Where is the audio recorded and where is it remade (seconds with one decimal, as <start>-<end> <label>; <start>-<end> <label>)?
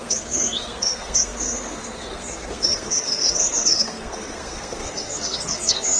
0.0-6.0 remade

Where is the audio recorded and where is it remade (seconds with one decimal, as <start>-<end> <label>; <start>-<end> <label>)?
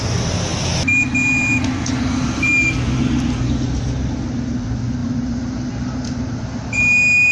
0.0-7.3 recorded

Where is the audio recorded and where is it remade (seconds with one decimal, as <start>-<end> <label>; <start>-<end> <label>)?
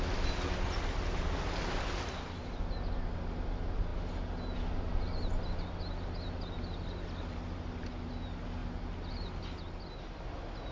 0.0-10.7 recorded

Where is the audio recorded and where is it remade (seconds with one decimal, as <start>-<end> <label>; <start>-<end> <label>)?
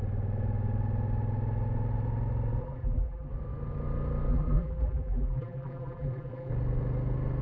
0.0-2.6 recorded; 2.6-3.3 remade; 3.3-4.3 recorded; 4.3-6.5 remade; 6.5-7.4 recorded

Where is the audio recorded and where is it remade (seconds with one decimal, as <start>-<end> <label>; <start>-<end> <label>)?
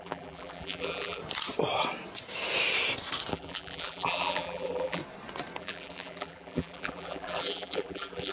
0.0-1.2 remade; 1.2-3.3 recorded; 3.3-5.0 remade; 5.0-5.6 recorded; 5.6-8.3 remade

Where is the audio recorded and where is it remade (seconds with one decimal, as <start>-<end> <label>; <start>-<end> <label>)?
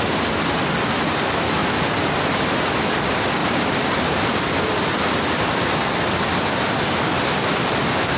0.0-8.2 recorded